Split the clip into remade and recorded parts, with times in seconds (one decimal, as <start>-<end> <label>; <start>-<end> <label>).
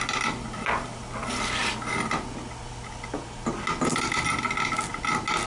0.0-5.5 recorded